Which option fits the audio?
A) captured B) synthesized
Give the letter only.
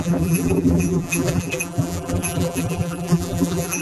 B